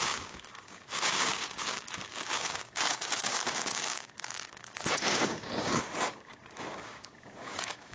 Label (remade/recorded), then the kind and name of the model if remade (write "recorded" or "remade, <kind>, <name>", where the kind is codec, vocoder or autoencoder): remade, codec, DAC